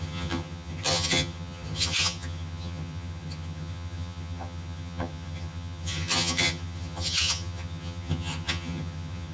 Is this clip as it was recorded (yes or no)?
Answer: no